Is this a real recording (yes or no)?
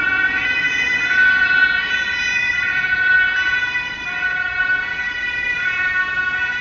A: yes